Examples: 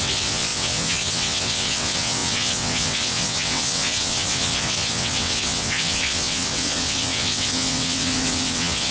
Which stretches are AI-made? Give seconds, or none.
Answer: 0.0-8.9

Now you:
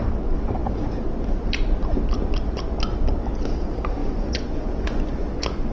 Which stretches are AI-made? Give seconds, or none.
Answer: 4.0-5.7

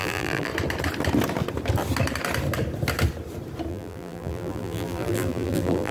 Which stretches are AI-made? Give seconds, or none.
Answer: 0.0-0.5; 3.7-5.9

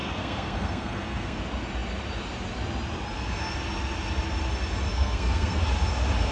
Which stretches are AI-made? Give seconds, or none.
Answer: 0.0-1.4; 4.9-5.6